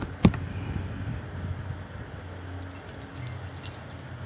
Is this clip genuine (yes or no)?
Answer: yes